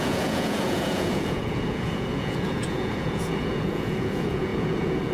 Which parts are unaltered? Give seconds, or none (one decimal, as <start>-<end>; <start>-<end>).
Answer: none

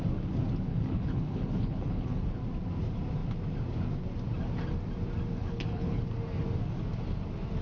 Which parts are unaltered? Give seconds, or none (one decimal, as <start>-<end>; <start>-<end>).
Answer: 0.0-0.7; 2.2-5.4; 6.0-7.6

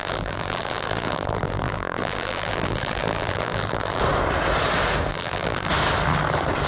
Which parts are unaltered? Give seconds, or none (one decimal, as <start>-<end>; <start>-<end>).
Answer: 4.0-5.1; 5.7-6.7

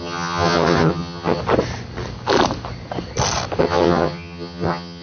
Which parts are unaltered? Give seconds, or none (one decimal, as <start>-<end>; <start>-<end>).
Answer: 1.4-3.6

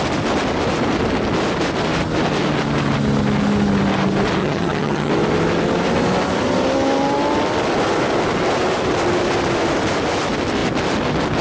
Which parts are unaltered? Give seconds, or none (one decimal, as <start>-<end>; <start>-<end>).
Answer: 0.0-4.4; 5.1-11.4